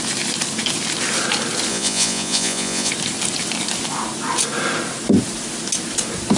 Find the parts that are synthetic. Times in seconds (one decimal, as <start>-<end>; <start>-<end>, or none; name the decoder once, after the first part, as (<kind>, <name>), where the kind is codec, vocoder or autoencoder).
1.7-2.9 (vocoder, Vocos)

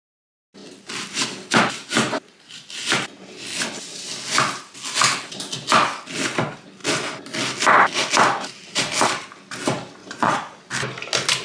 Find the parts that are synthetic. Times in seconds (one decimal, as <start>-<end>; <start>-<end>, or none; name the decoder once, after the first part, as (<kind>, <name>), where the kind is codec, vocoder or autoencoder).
10.0-10.7 (vocoder, Vocos)

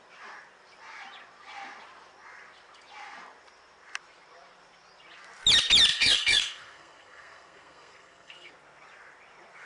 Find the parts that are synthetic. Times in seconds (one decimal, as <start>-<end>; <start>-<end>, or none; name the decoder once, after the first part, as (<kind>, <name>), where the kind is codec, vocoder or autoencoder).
5.9-8.5 (codec, SNAC)

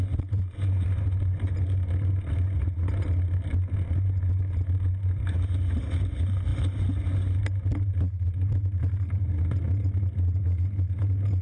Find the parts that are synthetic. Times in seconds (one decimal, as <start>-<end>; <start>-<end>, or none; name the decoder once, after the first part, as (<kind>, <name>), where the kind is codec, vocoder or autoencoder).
none